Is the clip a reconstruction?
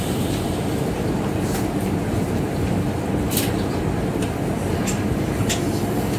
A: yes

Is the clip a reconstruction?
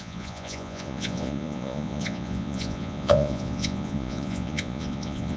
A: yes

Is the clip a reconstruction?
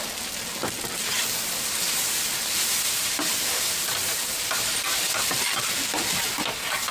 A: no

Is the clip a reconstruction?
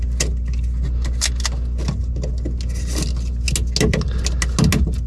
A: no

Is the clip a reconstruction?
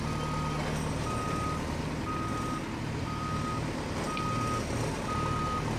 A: no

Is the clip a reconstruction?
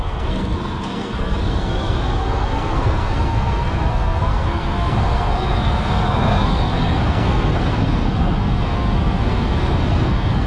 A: yes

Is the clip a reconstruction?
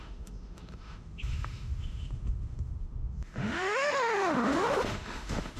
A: yes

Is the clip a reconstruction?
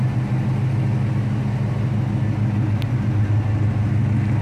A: no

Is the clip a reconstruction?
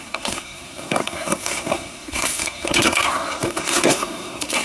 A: yes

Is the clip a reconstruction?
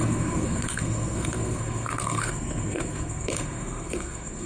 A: yes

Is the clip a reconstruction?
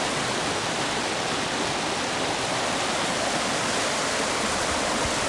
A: no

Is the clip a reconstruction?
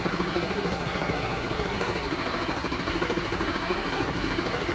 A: yes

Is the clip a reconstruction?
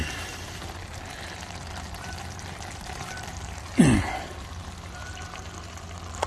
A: no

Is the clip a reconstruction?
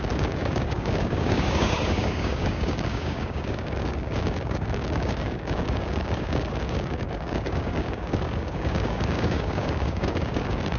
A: yes